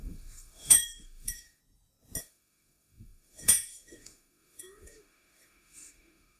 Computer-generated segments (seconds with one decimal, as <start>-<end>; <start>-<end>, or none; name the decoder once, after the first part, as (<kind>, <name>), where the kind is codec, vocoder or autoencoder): 0.0-1.6 (autoencoder, DAC-VAE); 2.2-6.4